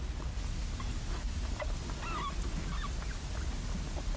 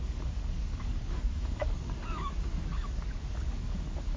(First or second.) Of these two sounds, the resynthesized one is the second